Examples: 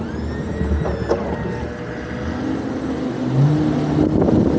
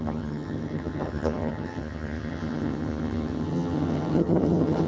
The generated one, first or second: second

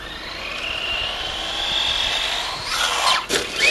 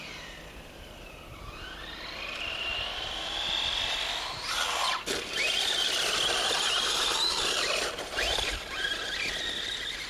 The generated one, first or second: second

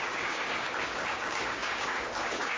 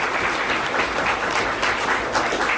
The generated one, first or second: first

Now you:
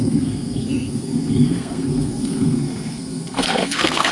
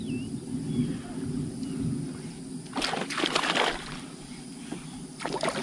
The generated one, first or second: first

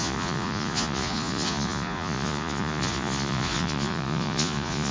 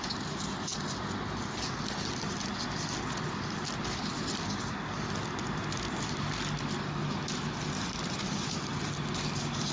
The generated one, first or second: first